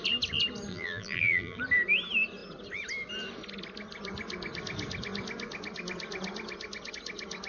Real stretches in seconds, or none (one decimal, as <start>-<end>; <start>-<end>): 0.0-0.7; 1.6-7.5